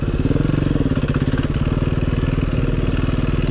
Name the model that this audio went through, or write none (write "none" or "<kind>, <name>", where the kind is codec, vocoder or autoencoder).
none